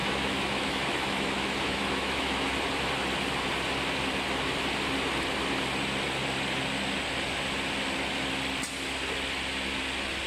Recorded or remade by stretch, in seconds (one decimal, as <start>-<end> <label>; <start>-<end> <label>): 0.0-2.5 remade; 2.5-10.3 recorded

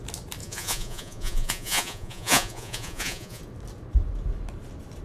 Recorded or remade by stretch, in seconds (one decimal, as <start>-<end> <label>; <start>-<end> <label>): 0.0-0.4 recorded; 0.4-3.4 remade; 3.4-5.0 recorded

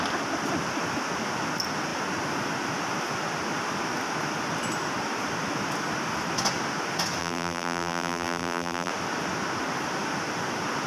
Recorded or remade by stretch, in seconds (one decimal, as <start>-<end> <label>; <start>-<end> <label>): 0.0-7.2 recorded; 7.2-8.9 remade; 8.9-10.9 recorded

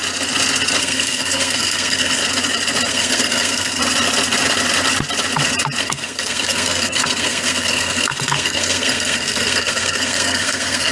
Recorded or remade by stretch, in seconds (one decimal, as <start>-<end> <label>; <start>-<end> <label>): 0.0-0.8 recorded; 0.8-2.2 remade; 2.2-2.9 recorded; 2.9-3.8 remade; 3.8-5.8 recorded; 5.8-10.9 remade

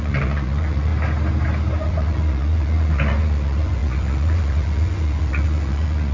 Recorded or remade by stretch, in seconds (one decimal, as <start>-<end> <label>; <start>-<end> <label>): 0.0-0.9 remade; 0.9-1.8 recorded; 1.8-6.1 remade